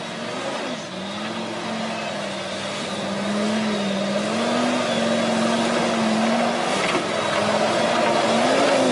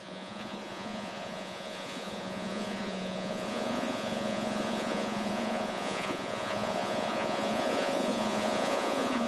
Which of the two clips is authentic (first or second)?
first